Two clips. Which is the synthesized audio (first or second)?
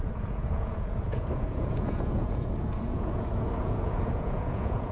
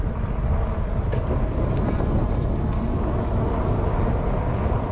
first